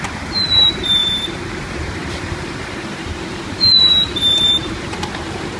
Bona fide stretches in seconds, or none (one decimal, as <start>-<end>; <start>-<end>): none